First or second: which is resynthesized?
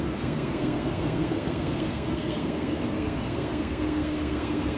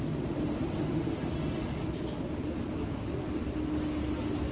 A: first